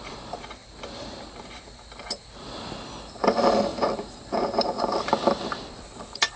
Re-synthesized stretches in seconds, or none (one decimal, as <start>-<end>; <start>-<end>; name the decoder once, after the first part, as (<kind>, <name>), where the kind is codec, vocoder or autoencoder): 3.7-6.4 (vocoder, BigVGAN v2)